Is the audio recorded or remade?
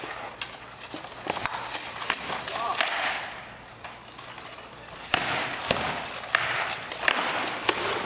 recorded